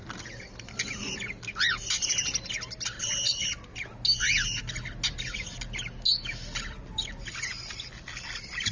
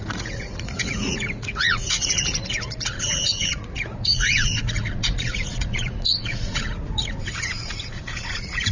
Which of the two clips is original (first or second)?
first